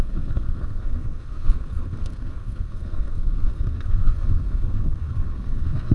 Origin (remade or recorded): remade